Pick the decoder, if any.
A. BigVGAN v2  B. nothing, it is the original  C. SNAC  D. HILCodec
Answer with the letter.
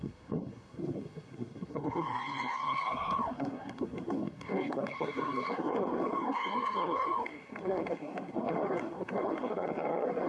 C